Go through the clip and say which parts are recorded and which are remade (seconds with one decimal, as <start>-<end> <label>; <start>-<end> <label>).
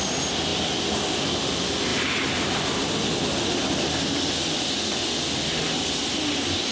0.0-6.7 recorded